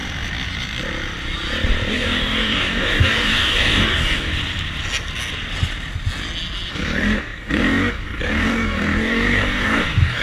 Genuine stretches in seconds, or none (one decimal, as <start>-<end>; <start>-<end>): 0.0-1.9; 4.3-6.7